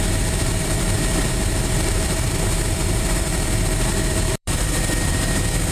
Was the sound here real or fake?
fake